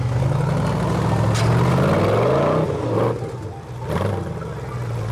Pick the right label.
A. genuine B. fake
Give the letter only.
A